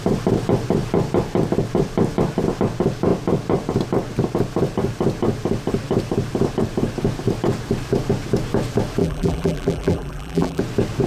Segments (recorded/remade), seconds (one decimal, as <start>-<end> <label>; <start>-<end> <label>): 0.0-9.0 recorded; 9.0-10.6 remade; 10.6-11.1 recorded